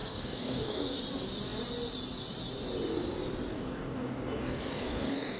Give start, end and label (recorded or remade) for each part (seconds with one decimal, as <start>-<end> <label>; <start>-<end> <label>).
0.0-1.0 remade; 1.0-3.5 recorded; 3.5-5.4 remade